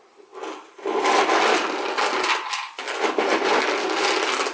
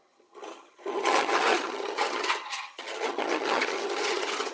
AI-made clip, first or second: second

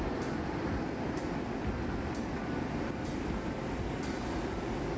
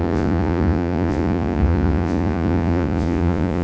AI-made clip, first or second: second